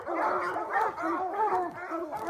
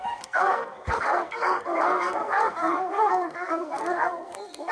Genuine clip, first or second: first